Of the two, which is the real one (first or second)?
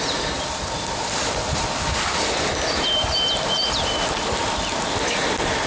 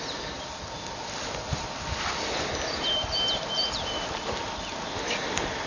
second